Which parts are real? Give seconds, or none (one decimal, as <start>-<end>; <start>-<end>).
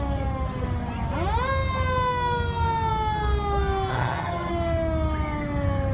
0.0-3.9; 4.5-5.9